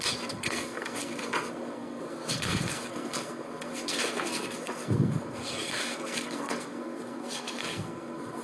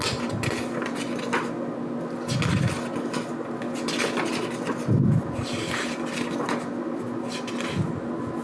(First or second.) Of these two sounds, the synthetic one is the first